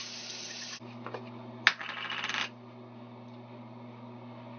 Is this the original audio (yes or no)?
yes